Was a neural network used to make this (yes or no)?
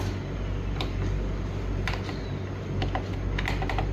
no